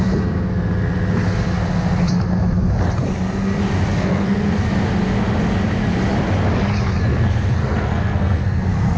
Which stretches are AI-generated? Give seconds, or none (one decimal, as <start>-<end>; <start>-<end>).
3.9-4.6; 7.6-9.0